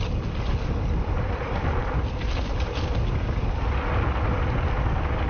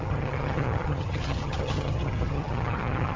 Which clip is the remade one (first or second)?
second